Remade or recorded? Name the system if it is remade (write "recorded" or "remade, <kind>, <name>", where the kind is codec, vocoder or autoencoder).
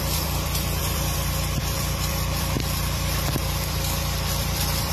remade, vocoder, BigVGAN v2